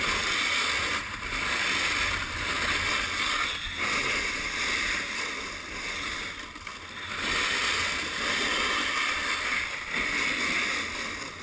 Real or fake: real